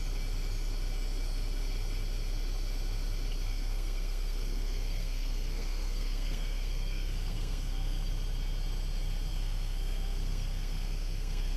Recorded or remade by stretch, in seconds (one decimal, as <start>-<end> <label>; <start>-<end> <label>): 0.0-3.5 recorded; 3.5-8.1 remade; 8.1-9.3 recorded; 9.3-11.6 remade